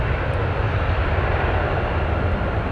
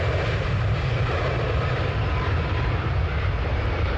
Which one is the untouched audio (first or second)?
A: first